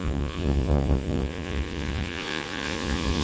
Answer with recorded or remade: remade